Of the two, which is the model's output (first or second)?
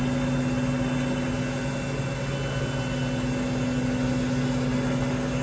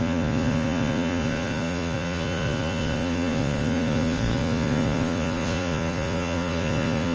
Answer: second